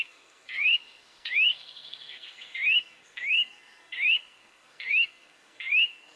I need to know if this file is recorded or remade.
remade